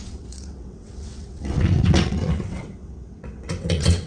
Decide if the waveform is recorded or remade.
remade